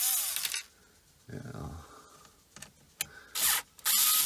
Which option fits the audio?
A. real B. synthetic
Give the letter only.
A